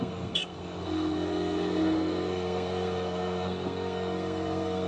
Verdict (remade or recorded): remade